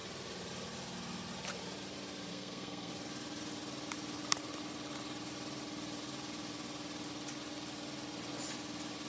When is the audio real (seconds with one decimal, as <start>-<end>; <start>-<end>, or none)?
0.0-2.3; 2.9-9.1